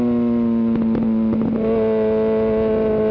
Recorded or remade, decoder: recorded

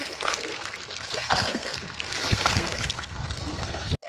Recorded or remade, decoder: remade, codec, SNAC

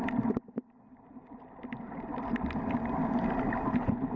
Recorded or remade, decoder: recorded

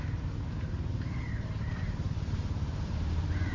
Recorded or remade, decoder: remade, vocoder, BigVGAN v2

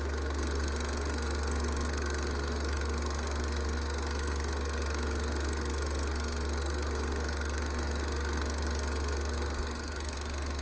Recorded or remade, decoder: remade, codec, SNAC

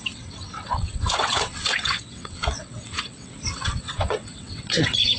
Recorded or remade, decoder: remade, vocoder, WaveNeXt